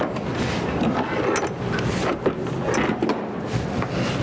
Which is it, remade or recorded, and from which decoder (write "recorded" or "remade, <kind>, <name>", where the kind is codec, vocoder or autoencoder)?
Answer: recorded